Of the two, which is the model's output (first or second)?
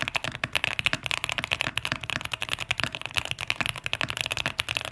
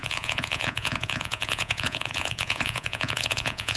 second